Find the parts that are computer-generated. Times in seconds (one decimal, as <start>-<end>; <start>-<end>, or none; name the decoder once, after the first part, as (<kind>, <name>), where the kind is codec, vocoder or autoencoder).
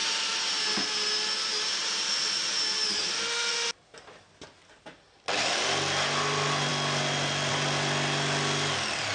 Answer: none